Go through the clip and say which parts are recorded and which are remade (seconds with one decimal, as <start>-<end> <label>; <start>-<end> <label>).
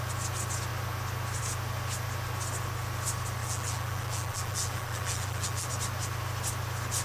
0.0-3.4 recorded; 3.4-5.7 remade; 5.7-7.0 recorded